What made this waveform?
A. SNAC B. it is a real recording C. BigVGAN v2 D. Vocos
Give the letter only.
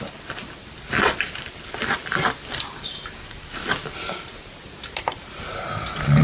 B